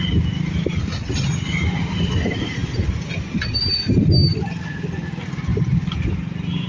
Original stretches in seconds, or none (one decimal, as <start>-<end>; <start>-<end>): 0.0-2.6; 4.0-5.5; 6.0-6.7